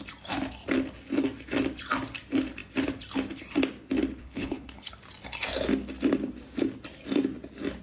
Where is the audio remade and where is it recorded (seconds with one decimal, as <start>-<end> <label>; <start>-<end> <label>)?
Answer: 0.0-4.2 recorded; 4.2-4.9 remade; 4.9-7.8 recorded